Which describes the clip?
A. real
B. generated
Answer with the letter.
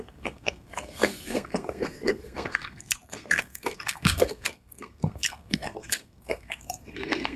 B